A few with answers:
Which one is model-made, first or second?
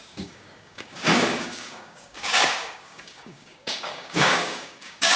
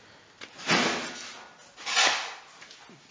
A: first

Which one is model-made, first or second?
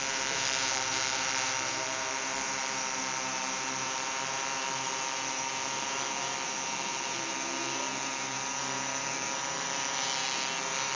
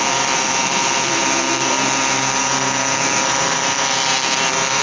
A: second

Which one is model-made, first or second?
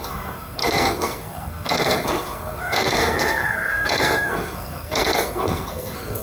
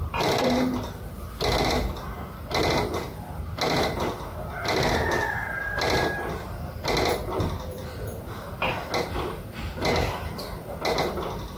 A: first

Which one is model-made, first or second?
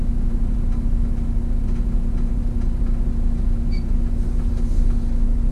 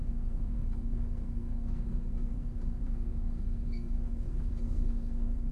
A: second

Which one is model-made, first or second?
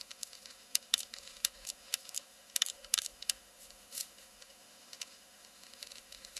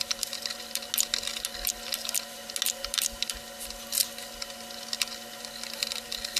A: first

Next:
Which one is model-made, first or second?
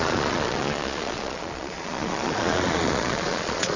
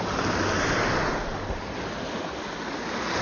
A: first